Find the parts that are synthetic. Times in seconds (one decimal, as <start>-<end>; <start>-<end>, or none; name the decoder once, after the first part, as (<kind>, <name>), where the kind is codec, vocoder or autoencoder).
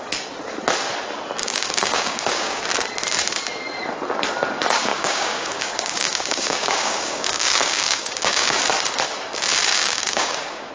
1.4-2.6 (codec, DAC); 4.9-8.6; 9.7-10.7